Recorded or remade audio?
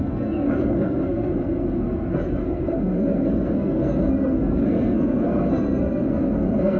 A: remade